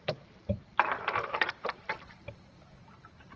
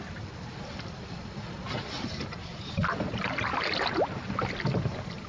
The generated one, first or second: first